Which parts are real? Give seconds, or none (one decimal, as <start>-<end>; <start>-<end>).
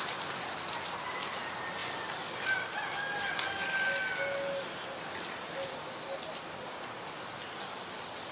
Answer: 0.0-8.3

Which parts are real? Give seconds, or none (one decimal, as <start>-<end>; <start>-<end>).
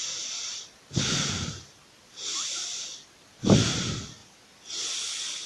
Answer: 0.0-5.5